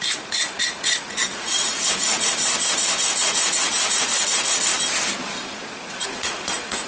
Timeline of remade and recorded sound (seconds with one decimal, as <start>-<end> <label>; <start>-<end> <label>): 0.0-2.4 remade; 2.4-3.2 recorded; 3.2-4.1 remade; 4.1-5.9 recorded; 5.9-6.9 remade